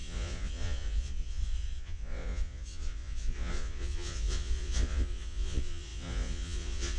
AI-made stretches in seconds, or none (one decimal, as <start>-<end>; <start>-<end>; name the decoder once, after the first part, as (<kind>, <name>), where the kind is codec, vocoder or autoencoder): 0.0-7.0 (vocoder, Vocos)